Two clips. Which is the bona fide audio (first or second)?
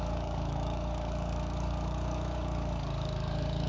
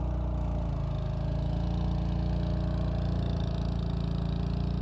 second